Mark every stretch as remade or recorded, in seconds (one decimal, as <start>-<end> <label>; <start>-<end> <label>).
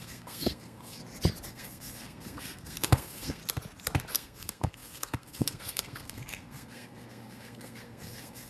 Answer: 0.0-1.0 remade; 1.0-1.5 recorded; 1.5-3.4 remade; 3.4-4.1 recorded; 4.1-8.5 remade